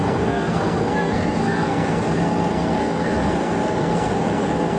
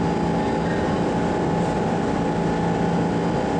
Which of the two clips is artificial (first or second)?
first